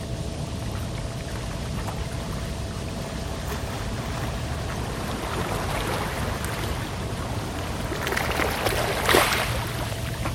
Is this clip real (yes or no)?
yes